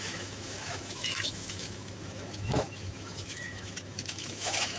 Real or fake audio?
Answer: fake